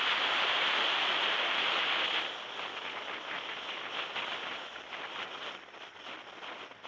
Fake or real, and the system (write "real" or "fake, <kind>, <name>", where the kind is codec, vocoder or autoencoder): real